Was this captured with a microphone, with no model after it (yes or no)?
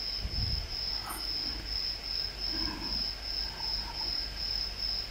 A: yes